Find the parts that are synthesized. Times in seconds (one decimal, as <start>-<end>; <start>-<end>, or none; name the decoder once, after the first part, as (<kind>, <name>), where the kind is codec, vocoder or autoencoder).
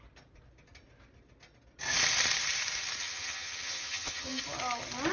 3.0-4.4 (vocoder, HiFi-GAN)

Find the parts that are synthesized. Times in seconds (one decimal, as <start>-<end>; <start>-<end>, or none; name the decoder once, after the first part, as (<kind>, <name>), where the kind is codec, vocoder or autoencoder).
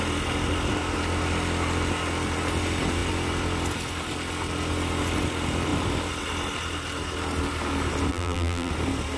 8.1-8.7 (vocoder, BigVGAN v2)